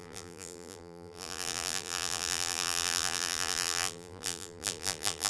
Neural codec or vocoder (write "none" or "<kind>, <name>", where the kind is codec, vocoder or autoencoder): vocoder, BigVGAN v2